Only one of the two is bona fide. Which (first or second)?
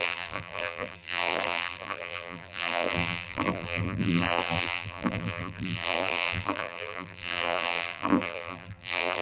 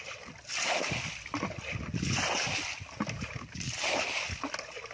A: second